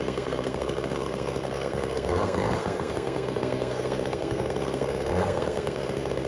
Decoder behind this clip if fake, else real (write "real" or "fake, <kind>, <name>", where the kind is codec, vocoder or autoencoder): fake, codec, SNAC